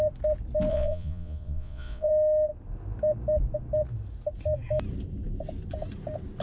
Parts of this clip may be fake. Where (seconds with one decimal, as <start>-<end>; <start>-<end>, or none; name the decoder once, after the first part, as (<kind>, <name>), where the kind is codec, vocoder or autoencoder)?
0.7-2.1 (vocoder, Vocos)